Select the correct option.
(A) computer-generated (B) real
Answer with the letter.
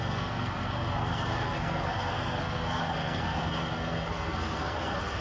A